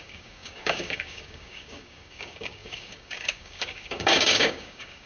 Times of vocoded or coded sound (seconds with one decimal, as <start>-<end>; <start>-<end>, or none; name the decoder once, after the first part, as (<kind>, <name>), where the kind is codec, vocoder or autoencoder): 0.0-5.1 (codec, DAC)